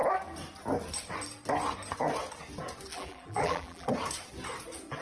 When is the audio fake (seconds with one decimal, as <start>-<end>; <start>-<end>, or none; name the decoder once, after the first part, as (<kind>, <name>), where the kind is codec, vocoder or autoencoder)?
2.9-3.9 (vocoder, BigVGAN v2)